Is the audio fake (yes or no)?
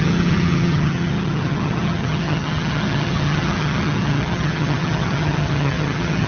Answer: yes